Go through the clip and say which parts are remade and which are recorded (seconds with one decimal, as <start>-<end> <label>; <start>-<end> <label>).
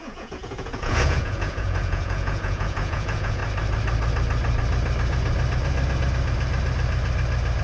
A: 0.0-3.4 remade; 3.4-7.6 recorded